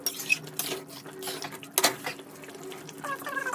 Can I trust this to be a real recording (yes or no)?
yes